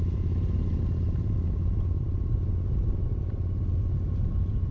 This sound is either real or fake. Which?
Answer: real